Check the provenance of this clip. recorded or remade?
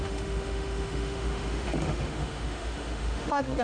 remade